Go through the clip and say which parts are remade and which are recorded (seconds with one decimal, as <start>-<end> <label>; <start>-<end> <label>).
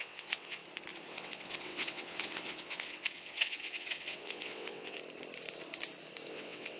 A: 0.0-0.6 remade; 0.6-1.1 recorded; 1.1-5.0 remade; 5.0-6.3 recorded; 6.3-6.8 remade